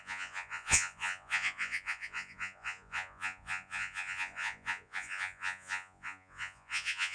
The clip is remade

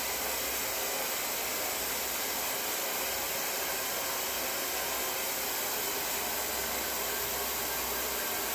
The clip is recorded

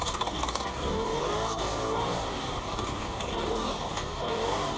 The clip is remade